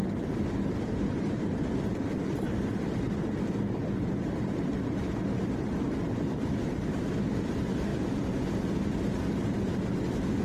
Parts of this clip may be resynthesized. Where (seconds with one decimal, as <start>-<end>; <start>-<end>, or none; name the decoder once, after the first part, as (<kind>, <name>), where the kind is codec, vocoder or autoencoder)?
0.0-4.6 (vocoder, BigVGAN v2)